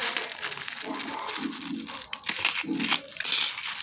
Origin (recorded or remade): recorded